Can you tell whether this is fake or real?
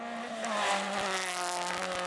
real